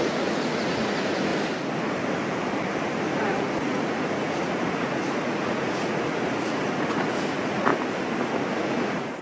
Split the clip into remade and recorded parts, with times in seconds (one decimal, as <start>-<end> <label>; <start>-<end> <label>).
0.0-1.3 remade; 1.3-3.1 recorded; 3.1-7.7 remade; 7.7-8.5 recorded; 8.5-9.2 remade